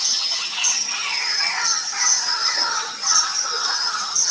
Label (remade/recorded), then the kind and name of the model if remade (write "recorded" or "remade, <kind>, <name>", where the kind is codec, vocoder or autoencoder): remade, vocoder, HiFi-GAN